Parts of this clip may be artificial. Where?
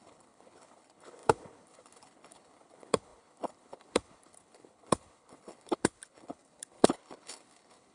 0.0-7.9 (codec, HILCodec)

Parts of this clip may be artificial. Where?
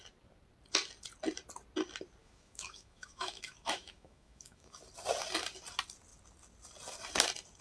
2.2-4.8 (autoencoder, DAC-VAE)